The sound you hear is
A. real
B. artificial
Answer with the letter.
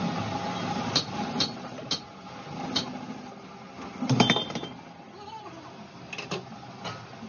A